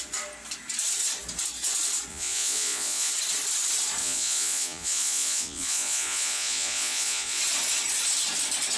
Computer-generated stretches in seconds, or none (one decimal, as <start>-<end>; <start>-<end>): 2.1-3.1; 4.0-7.4